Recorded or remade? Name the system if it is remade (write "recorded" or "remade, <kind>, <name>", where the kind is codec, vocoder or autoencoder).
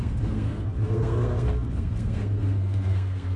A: remade, codec, SNAC